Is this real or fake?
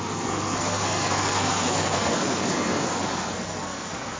fake